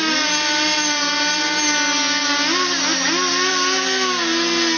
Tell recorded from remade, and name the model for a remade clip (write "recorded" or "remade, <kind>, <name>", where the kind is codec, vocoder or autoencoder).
recorded